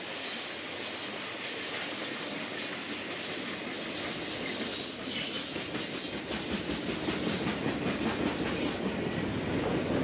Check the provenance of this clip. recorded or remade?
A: recorded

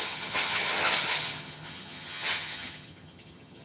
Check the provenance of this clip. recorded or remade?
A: remade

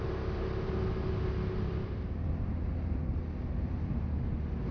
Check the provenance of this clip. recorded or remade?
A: recorded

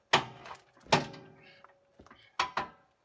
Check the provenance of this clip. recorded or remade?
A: recorded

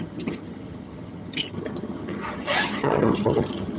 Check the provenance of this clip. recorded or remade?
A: remade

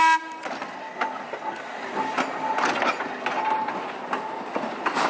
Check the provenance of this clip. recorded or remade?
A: recorded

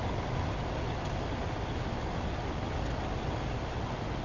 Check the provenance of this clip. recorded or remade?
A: recorded